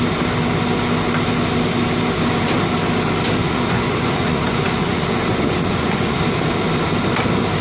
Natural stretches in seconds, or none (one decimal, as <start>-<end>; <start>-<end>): 0.0-3.4; 6.2-7.6